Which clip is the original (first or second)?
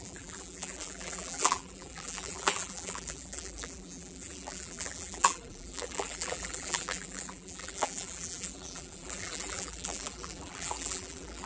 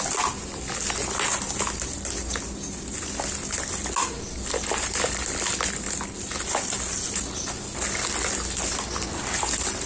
second